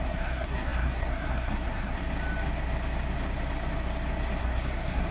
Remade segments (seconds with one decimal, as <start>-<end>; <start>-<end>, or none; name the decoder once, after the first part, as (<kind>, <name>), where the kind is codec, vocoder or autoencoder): 0.0-2.0 (codec, SNAC); 4.4-5.1